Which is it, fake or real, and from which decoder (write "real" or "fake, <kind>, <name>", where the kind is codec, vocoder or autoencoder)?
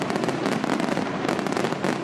real